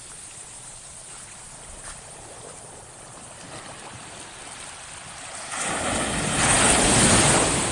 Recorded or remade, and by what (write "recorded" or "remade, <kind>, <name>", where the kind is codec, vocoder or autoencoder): recorded